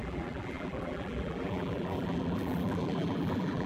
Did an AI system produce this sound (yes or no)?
yes